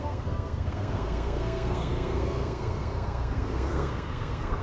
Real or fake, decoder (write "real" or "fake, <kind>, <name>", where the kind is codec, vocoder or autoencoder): fake, codec, SNAC